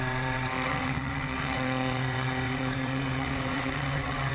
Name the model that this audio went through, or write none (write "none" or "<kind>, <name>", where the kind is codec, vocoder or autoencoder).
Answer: vocoder, WaveNeXt